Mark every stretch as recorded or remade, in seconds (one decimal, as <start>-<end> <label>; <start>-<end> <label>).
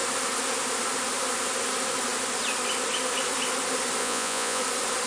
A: 0.0-4.0 recorded; 4.0-4.6 remade; 4.6-5.1 recorded